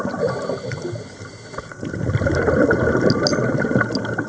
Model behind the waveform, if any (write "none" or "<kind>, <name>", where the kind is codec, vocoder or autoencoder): none